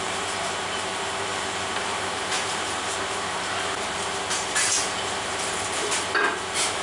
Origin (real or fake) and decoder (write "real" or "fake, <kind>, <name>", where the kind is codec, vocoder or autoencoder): fake, vocoder, BigVGAN v2